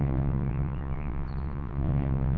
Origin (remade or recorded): remade